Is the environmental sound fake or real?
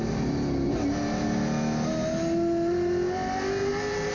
real